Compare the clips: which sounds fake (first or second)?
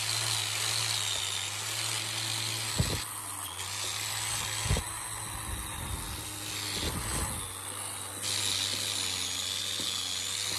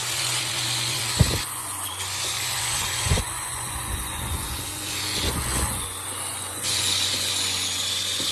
second